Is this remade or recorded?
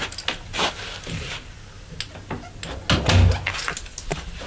recorded